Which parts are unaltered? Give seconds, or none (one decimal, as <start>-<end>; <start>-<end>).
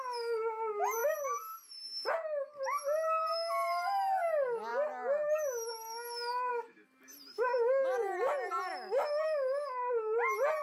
0.0-10.6